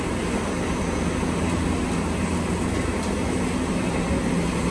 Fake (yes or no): no